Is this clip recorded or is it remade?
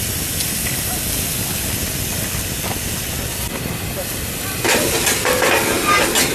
recorded